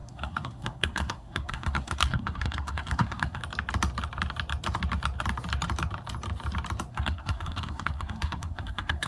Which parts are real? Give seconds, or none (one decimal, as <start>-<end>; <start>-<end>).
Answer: 3.4-6.9